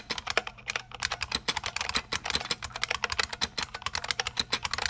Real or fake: real